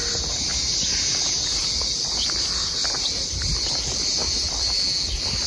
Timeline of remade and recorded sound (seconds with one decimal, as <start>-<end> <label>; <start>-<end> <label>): 0.0-5.5 recorded